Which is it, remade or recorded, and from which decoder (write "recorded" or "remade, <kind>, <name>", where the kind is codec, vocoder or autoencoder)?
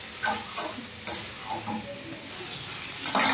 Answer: recorded